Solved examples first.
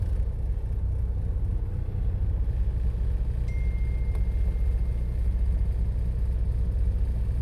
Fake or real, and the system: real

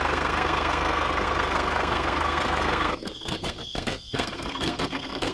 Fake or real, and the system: fake, codec, SNAC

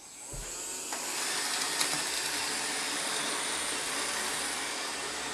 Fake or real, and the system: real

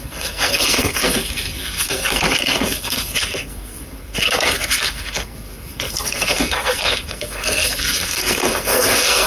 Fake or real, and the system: fake, codec, SNAC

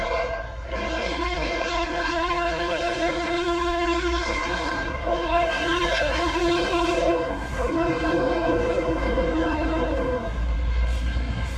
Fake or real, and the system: fake, codec, SNAC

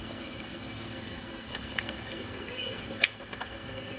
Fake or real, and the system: fake, codec, SNAC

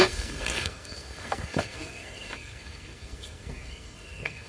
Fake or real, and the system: fake, codec, SNAC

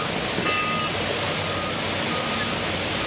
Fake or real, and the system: real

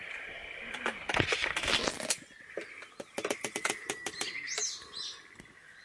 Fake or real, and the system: real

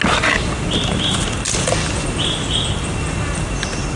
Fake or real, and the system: real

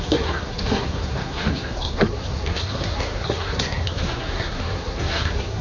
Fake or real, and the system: fake, codec, SNAC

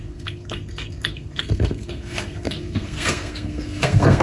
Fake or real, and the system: fake, codec, SNAC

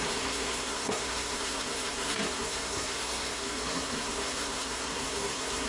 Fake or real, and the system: fake, codec, SNAC